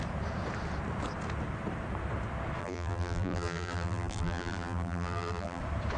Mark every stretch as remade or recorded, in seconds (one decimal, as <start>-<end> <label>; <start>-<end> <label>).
0.0-2.6 recorded; 2.6-5.6 remade; 5.6-6.0 recorded